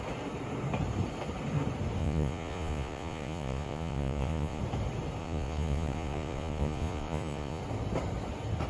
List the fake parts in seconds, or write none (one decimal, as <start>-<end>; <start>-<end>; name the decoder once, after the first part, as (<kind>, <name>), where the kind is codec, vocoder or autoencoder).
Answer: 2.0-4.6 (vocoder, Vocos); 5.2-7.6